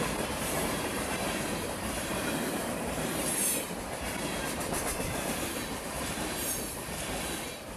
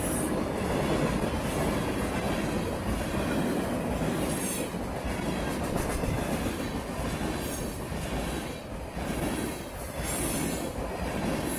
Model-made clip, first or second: first